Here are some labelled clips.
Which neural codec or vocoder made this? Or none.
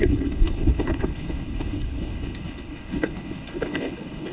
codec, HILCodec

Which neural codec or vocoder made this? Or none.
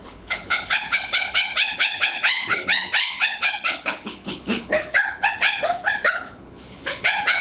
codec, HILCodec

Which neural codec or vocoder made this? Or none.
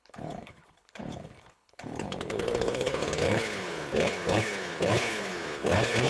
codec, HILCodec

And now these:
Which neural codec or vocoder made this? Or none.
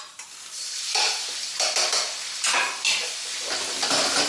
none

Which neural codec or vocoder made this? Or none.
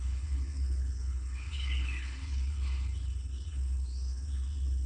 codec, HILCodec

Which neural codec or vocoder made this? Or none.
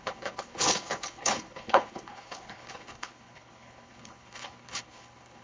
codec, HILCodec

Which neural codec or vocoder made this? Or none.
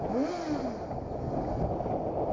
none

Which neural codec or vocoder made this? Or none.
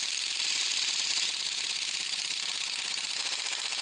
none